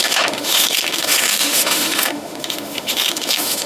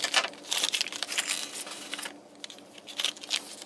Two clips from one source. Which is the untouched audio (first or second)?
second